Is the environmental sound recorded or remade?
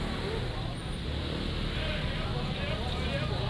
recorded